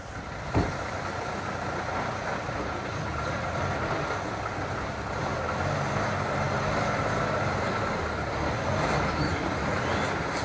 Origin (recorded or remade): recorded